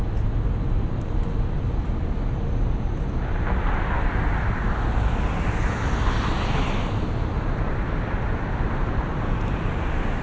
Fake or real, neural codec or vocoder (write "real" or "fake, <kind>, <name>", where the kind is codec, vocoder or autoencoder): real